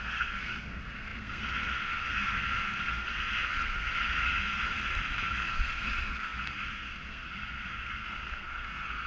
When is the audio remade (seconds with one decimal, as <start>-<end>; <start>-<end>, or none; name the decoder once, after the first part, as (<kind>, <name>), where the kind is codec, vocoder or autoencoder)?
0.0-9.1 (codec, SNAC)